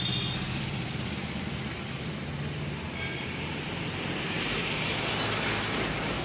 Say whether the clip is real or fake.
real